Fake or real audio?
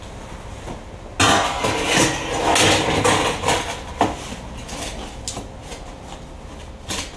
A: real